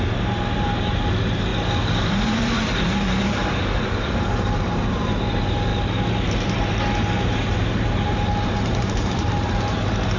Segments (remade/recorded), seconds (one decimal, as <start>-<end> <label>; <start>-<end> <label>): 0.0-1.5 remade; 1.5-2.1 recorded; 2.1-5.7 remade; 5.7-6.3 recorded; 6.3-10.2 remade